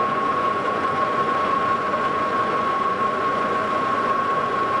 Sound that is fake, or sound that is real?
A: fake